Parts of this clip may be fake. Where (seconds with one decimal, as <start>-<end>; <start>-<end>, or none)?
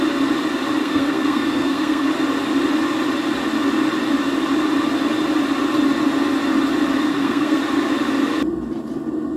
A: 0.8-2.1; 7.1-7.6